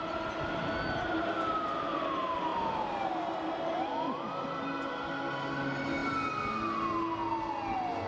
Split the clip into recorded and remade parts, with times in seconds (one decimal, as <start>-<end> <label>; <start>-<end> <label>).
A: 0.0-8.1 recorded